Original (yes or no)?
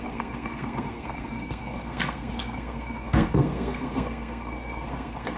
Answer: no